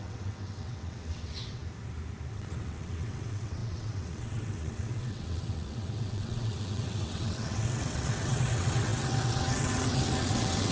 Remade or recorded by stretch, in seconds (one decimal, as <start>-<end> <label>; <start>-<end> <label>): 0.0-1.6 remade; 1.6-2.3 recorded; 2.3-10.7 remade